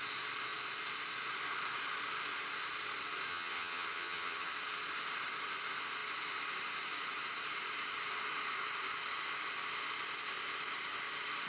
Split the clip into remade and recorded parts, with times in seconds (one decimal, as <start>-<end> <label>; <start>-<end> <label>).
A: 0.0-3.3 recorded; 3.3-4.5 remade; 4.5-11.5 recorded